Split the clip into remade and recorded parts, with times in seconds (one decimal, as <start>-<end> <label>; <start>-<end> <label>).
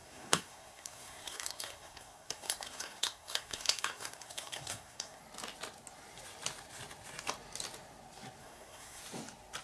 0.0-5.2 remade; 5.2-8.4 recorded; 8.4-9.0 remade; 9.0-9.6 recorded